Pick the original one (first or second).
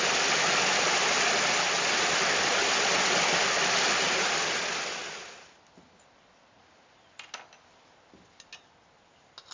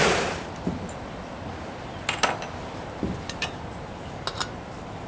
first